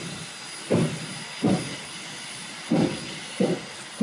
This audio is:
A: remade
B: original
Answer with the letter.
B